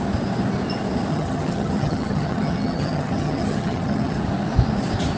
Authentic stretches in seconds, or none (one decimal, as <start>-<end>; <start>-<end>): 0.0-1.1; 4.2-5.2